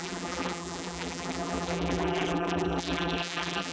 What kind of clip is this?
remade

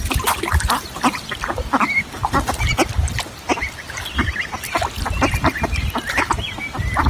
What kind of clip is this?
recorded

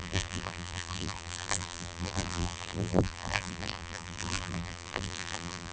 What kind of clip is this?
remade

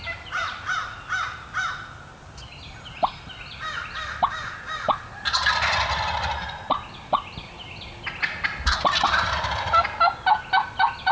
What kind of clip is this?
recorded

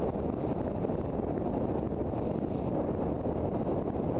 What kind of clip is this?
recorded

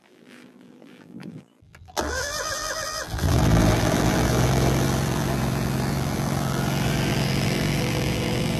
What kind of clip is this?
remade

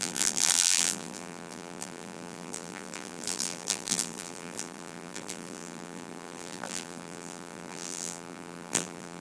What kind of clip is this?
remade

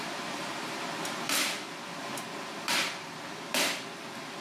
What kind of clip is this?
remade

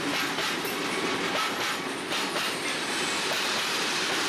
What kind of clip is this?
recorded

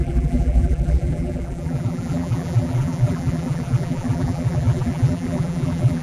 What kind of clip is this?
remade